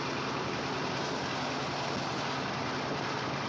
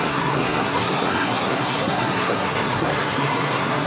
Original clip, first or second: first